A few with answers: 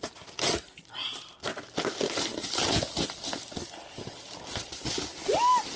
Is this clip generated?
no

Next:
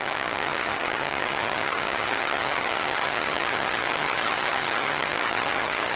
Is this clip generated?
yes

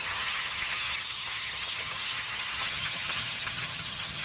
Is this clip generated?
yes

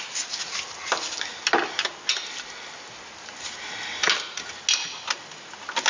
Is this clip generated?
no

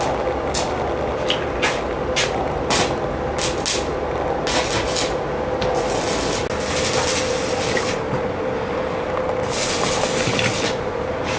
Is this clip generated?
no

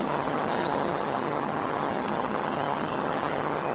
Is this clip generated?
yes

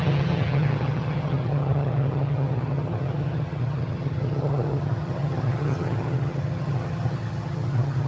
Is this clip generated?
yes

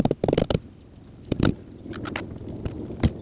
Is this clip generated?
no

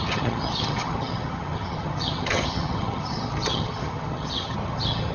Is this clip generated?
yes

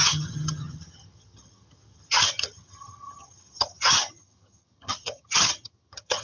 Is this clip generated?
yes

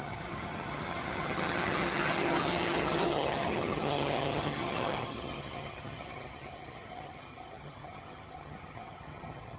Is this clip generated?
yes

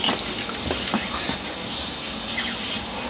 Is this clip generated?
no